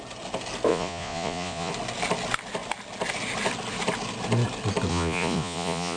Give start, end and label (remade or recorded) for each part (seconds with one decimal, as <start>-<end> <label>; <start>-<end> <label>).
0.0-0.7 recorded; 0.7-1.7 remade; 1.7-4.9 recorded; 4.9-6.0 remade